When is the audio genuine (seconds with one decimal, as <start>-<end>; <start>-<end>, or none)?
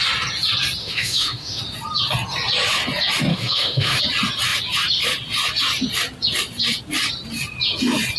0.0-0.8; 1.6-3.3; 4.0-8.2